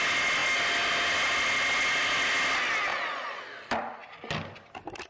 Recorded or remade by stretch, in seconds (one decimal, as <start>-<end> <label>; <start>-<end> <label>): 0.0-2.9 recorded; 2.9-3.4 remade; 3.4-5.1 recorded